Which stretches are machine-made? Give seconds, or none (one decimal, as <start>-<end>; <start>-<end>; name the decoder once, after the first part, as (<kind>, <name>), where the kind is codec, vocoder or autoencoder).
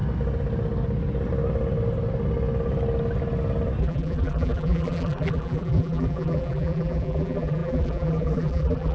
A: 3.8-8.9 (vocoder, BigVGAN v2)